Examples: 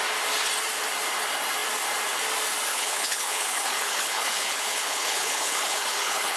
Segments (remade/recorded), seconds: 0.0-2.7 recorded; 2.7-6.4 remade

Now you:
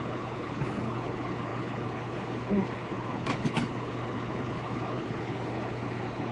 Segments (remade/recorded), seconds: 0.0-6.3 remade